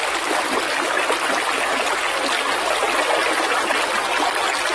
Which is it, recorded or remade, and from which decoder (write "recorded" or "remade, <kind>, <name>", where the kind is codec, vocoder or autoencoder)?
recorded